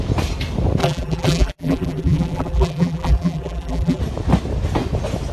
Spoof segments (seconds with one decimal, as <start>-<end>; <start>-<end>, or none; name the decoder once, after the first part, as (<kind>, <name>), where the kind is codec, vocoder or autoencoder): 0.8-4.0 (vocoder, BigVGAN v2)